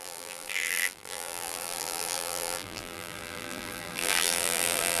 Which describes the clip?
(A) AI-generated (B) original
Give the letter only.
A